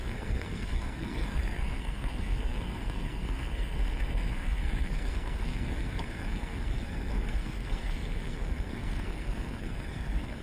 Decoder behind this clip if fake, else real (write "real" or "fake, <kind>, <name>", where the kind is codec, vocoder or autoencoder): fake, codec, SNAC